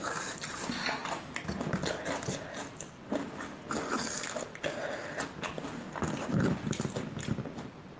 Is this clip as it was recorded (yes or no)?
yes